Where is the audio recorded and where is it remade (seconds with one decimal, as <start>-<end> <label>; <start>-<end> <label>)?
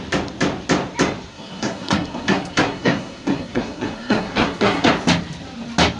0.0-1.3 recorded; 1.3-4.9 remade; 4.9-6.0 recorded